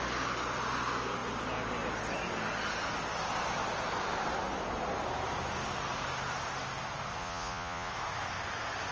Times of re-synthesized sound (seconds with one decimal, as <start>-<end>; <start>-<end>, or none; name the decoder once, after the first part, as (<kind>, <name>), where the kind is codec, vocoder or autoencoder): 7.2-7.9 (vocoder, Vocos)